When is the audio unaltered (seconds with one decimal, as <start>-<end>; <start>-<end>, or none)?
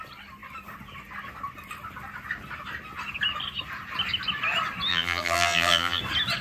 0.0-4.9; 6.0-6.4